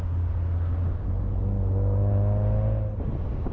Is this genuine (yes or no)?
yes